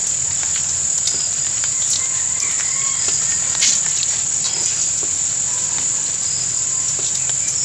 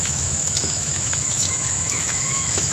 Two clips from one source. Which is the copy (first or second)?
second